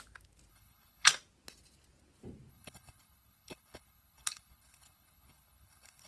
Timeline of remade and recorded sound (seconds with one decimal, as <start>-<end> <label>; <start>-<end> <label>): 0.0-0.5 recorded; 0.5-1.1 remade; 1.1-2.5 recorded; 2.5-6.1 remade